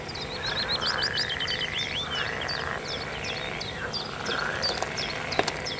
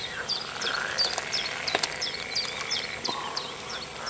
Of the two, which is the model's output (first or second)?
second